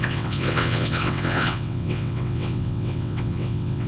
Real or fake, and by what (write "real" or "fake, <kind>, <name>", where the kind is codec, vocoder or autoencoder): fake, vocoder, WaveNeXt